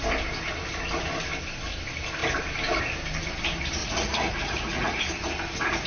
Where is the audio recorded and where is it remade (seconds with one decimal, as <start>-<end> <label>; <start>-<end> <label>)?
0.0-3.8 recorded; 3.8-5.0 remade; 5.0-5.9 recorded